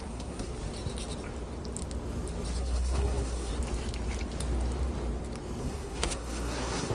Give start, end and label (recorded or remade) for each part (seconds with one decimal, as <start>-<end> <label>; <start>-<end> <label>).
0.0-0.5 remade; 0.5-2.6 recorded; 2.6-3.5 remade; 3.5-5.6 recorded; 5.6-6.9 remade